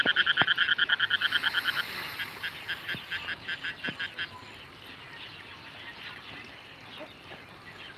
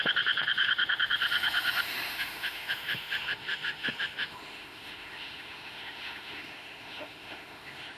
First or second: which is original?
first